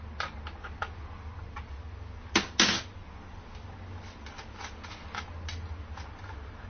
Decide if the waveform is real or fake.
real